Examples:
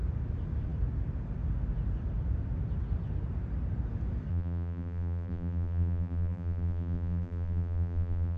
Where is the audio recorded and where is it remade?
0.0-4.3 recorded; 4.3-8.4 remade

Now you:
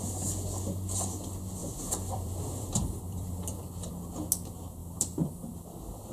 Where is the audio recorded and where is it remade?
0.0-1.6 recorded; 1.6-3.9 remade; 3.9-4.8 recorded; 4.8-5.3 remade; 5.3-6.1 recorded

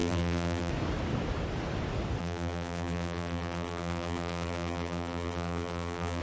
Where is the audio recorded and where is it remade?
0.0-0.7 remade; 0.7-2.2 recorded; 2.2-6.2 remade

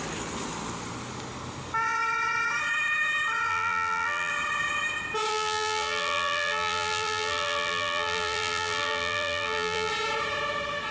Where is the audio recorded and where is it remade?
0.0-3.5 recorded; 3.5-4.3 remade; 4.3-5.3 recorded; 5.3-9.9 remade; 9.9-10.9 recorded